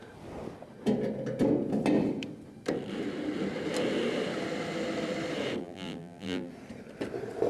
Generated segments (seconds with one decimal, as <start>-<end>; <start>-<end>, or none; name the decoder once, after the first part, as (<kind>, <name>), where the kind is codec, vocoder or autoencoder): 5.6-6.5 (vocoder, BigVGAN v2)